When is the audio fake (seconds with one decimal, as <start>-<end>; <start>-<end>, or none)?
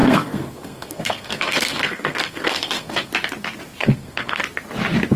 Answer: 0.0-3.1; 3.8-4.4